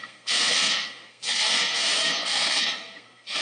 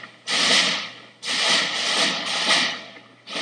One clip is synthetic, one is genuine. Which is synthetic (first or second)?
first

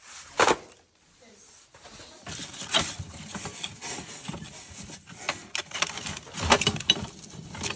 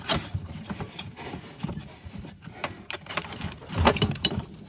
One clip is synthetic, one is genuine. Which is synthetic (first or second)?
second